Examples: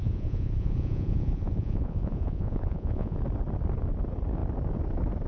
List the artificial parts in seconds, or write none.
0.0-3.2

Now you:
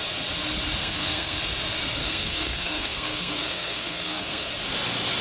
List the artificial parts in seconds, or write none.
0.8-1.4; 2.0-4.5